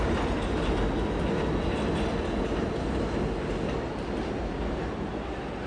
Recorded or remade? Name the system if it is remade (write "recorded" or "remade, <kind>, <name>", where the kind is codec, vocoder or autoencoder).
recorded